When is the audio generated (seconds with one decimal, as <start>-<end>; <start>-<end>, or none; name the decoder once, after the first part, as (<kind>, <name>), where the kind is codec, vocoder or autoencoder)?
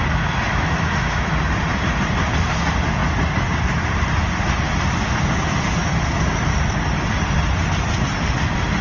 0.5-1.3 (autoencoder, DAC-VAE)